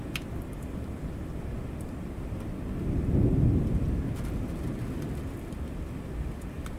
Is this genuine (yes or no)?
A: yes